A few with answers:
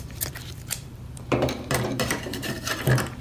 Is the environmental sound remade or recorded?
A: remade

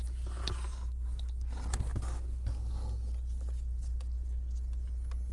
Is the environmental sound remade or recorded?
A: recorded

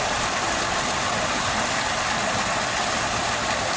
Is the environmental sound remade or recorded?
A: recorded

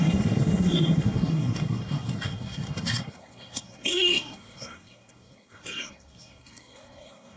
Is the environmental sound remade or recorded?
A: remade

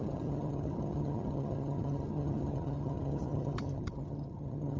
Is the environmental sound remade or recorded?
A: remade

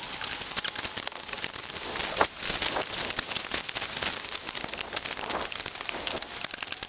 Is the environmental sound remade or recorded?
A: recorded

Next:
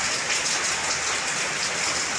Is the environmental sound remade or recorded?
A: recorded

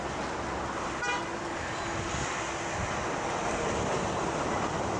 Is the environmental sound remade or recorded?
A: recorded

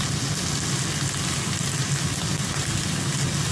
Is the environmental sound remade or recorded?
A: recorded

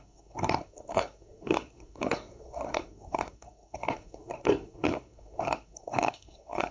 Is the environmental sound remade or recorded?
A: remade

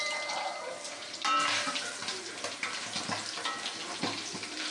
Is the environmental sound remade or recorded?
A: remade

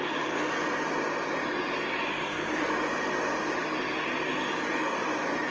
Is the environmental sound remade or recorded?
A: recorded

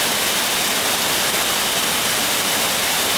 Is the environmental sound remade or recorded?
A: recorded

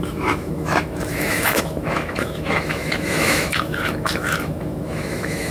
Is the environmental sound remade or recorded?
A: remade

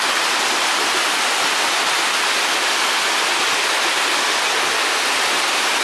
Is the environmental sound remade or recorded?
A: recorded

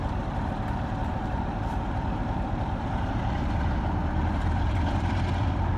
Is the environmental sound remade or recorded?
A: remade